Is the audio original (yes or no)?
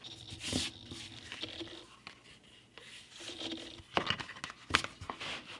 yes